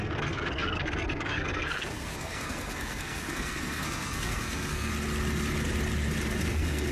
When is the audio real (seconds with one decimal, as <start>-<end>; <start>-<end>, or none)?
4.9-6.5